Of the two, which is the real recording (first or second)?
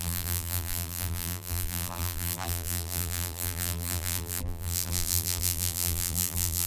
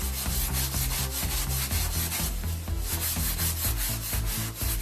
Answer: second